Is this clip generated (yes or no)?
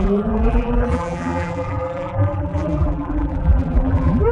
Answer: yes